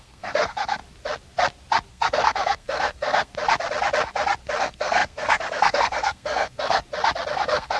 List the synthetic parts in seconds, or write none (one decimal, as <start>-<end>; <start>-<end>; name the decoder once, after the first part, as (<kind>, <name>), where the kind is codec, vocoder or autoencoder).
0.0-0.8 (codec, SNAC); 1.9-3.3; 4.6-6.8; 7.3-7.8